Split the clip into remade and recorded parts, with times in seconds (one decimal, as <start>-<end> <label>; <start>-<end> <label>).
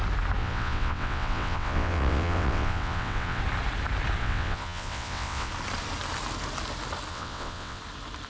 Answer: 0.0-0.4 recorded; 0.4-3.4 remade; 3.4-4.2 recorded; 4.2-5.5 remade; 5.5-7.1 recorded; 7.1-7.8 remade; 7.8-8.3 recorded